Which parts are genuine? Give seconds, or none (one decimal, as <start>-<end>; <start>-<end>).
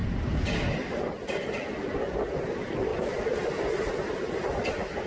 0.0-5.1